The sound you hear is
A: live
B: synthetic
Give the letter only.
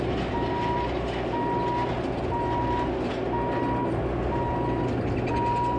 A